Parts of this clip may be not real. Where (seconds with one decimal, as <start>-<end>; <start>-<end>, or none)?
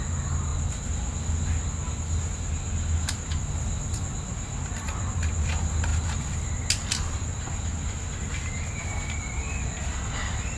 none